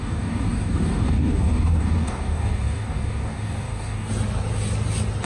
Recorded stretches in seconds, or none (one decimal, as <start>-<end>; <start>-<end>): 4.1-5.3